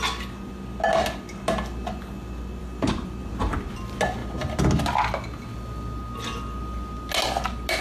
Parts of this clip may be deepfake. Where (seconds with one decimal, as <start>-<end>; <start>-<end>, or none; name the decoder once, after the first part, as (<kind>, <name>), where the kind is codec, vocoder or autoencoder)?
2.6-3.3 (vocoder, BigVGAN v2)